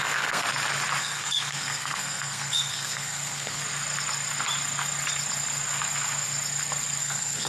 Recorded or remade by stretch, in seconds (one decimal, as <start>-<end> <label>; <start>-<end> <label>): 0.0-0.4 remade; 0.4-1.0 recorded; 1.0-3.6 remade; 3.6-7.0 recorded; 7.0-7.5 remade